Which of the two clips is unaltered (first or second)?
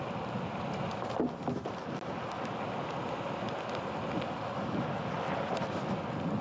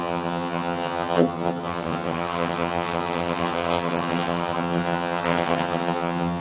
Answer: first